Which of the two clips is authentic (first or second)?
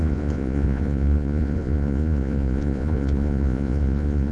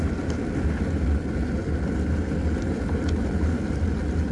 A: second